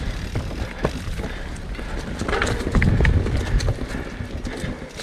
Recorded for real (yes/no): yes